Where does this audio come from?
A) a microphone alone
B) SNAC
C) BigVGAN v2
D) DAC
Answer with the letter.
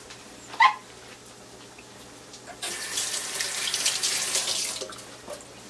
A